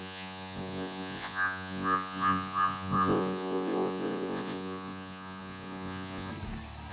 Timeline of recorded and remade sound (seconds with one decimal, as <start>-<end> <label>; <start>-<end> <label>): 0.0-6.3 remade; 6.3-6.9 recorded